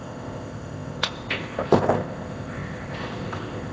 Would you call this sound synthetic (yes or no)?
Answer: yes